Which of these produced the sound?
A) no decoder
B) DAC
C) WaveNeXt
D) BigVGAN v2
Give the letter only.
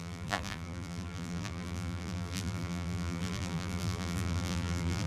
D